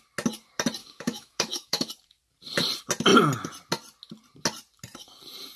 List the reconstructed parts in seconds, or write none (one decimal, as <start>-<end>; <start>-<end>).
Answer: 0.8-1.9